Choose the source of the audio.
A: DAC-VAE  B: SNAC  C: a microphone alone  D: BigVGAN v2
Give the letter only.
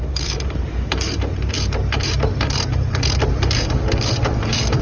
D